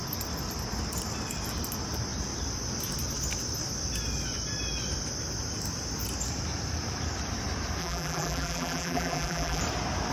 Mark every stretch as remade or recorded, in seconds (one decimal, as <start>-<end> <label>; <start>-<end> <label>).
0.0-7.8 recorded; 7.8-9.6 remade; 9.6-10.1 recorded